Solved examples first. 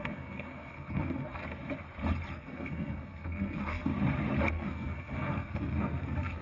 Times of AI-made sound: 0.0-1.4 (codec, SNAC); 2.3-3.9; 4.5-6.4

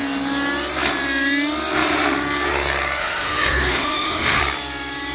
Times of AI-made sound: 3.0-4.4 (autoencoder, DAC-VAE)

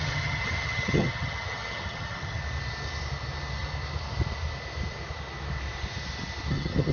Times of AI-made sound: 0.0-2.4 (vocoder, HiFi-GAN); 6.5-6.9

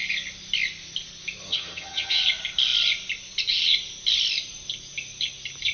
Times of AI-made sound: 1.5-2.2 (vocoder, HiFi-GAN)

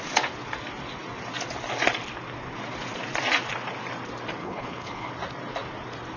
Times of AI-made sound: 4.4-5.1 (codec, HILCodec)